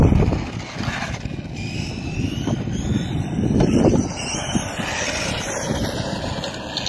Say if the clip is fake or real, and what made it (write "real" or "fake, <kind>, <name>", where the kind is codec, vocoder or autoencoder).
real